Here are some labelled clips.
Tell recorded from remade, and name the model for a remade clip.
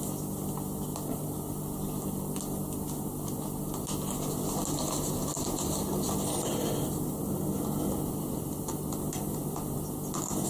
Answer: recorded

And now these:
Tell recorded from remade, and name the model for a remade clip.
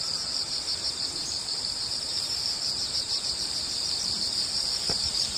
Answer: remade, vocoder, BigVGAN v2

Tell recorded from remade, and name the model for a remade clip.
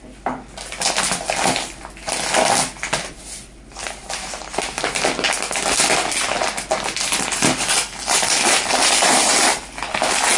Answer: recorded